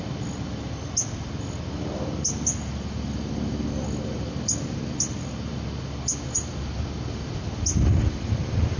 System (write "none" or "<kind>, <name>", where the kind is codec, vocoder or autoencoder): none